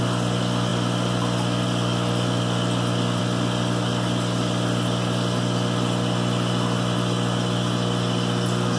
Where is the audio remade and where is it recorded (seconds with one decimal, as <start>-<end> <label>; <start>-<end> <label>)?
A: 0.0-8.8 recorded